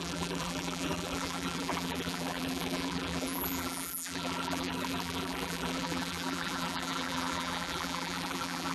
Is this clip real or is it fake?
fake